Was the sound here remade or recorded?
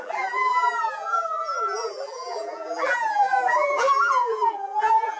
remade